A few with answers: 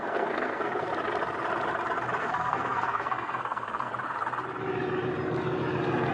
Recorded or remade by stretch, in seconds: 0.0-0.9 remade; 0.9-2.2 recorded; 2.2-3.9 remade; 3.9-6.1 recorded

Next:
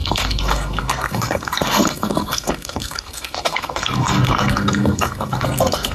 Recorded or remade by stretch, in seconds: 0.0-5.9 remade

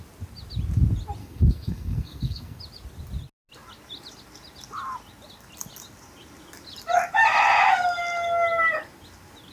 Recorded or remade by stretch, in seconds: 0.0-1.2 recorded; 1.2-2.6 remade; 2.6-9.5 recorded

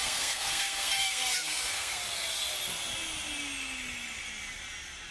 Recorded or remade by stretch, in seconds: 0.0-2.0 remade; 2.0-5.1 recorded

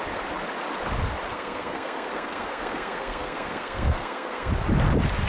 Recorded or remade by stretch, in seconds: 0.0-1.3 recorded; 1.3-4.5 remade; 4.5-5.3 recorded

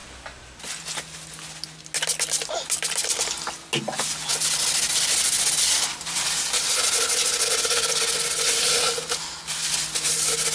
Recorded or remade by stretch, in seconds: 0.0-10.5 recorded